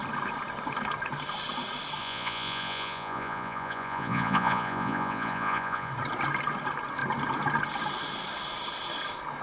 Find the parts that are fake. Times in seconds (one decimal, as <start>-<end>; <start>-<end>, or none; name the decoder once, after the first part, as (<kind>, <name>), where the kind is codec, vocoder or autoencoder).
2.0-5.9 (vocoder, Vocos)